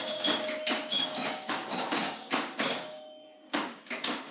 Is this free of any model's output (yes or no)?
no